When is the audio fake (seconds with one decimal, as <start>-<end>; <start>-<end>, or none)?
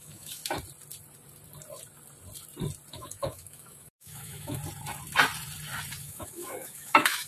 0.0-0.4; 2.9-4.6; 6.0-7.3